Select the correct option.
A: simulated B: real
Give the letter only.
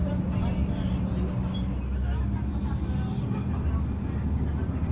B